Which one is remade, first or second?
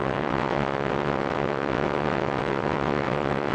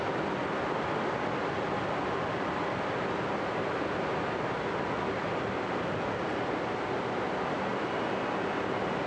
first